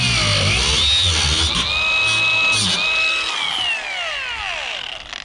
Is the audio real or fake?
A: real